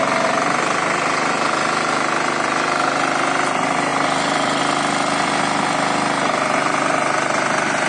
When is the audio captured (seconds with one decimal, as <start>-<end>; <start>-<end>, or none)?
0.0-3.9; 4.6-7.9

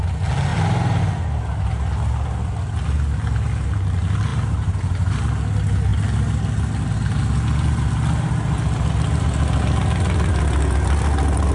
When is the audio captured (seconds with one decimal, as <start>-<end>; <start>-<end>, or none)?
0.0-0.5; 1.0-4.3; 5.2-11.5

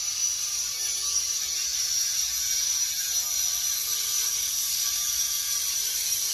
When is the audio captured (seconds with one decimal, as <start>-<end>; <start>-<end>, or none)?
none

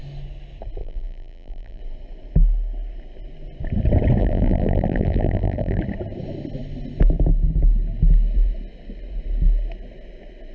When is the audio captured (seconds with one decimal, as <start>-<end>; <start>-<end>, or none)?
0.0-0.8; 1.8-4.2; 5.8-10.5

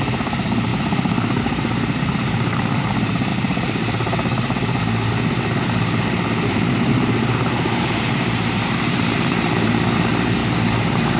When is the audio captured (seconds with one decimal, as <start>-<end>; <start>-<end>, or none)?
0.7-1.4; 3.3-6.9